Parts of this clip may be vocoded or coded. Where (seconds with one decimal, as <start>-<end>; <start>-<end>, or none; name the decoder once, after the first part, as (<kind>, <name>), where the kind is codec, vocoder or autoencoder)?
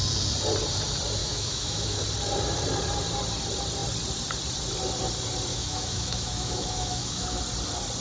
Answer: 1.2-2.0 (autoencoder, DAC-VAE); 5.5-7.4